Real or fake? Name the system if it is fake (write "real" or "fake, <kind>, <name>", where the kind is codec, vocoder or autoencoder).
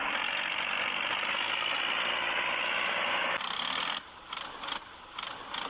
fake, vocoder, BigVGAN v2